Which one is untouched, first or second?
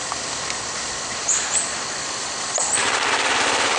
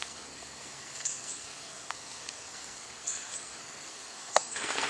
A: first